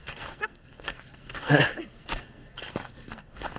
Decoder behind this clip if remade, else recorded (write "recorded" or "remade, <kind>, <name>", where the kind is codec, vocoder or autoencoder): remade, codec, SNAC